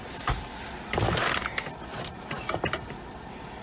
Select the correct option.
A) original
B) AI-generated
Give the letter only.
B